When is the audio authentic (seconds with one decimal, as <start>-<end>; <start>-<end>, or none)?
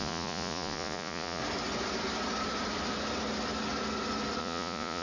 1.4-4.4